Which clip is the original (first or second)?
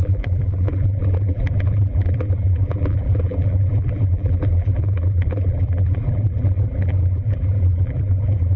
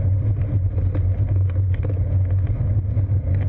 second